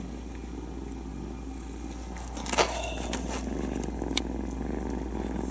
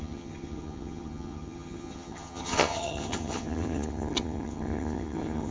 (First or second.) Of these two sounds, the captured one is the first